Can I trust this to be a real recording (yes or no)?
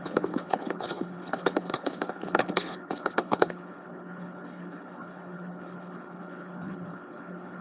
no